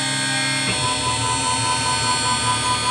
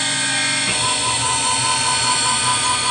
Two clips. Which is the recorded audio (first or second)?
first